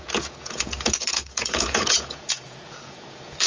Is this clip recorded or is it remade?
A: remade